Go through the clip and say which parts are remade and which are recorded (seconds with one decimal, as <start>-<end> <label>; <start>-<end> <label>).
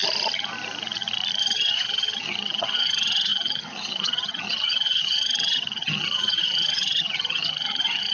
0.0-1.4 recorded; 1.4-8.1 remade